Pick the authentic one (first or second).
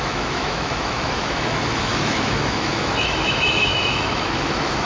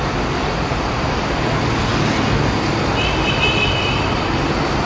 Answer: second